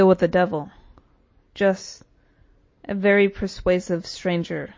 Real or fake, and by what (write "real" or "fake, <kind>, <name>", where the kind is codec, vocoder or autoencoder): real